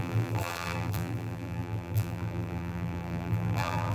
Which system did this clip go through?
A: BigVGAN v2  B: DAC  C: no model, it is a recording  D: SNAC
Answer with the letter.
A